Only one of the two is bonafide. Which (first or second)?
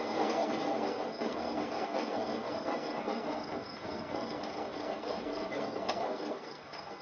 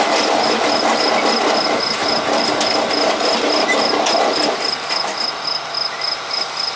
second